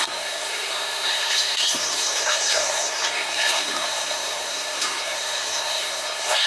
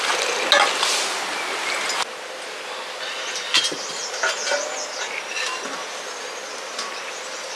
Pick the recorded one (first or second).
second